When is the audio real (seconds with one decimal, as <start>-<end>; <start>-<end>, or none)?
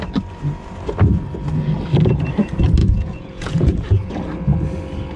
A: 0.0-2.8; 4.1-5.2